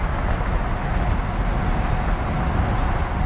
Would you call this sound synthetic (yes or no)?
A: no